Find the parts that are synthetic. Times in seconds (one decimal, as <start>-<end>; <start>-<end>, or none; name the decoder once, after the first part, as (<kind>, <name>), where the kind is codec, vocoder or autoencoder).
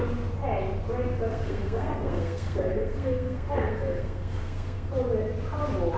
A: 1.3-4.9 (codec, SNAC)